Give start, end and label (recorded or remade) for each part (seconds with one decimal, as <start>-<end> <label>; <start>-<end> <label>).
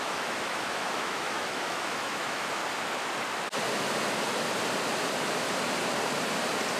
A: 0.0-2.6 remade; 2.6-6.8 recorded